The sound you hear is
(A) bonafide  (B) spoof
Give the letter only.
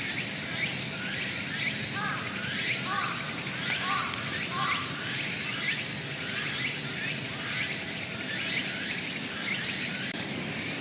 A